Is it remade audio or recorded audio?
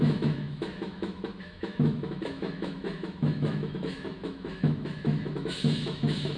remade